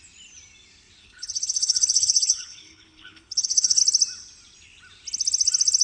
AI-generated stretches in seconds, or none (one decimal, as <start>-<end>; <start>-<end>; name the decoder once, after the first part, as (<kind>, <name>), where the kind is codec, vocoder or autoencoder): 1.0-3.8 (codec, HILCodec)